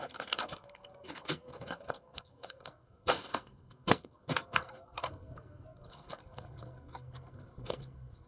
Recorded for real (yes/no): no